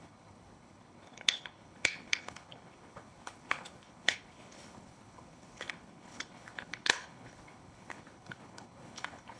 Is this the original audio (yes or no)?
no